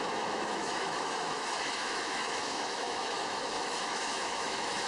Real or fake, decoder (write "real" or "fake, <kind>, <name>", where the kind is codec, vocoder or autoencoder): fake, autoencoder, DAC-VAE